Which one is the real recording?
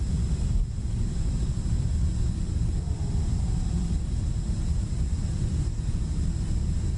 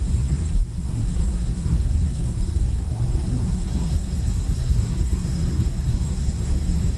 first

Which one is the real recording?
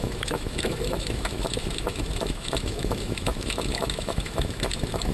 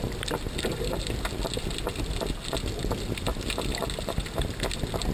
second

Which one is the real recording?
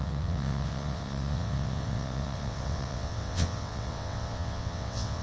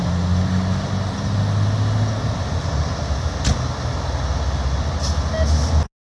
second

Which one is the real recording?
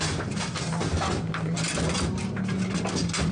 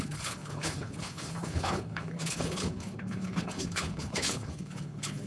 first